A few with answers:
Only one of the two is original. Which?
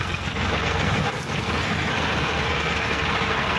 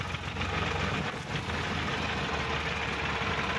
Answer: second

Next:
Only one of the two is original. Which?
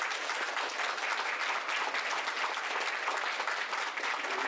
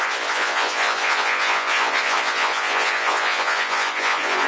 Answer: first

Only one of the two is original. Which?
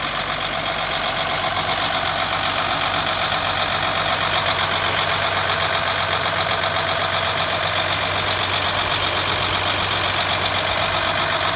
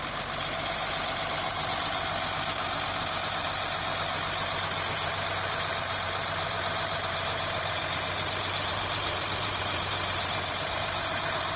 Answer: first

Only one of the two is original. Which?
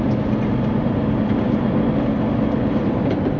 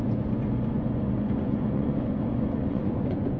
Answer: first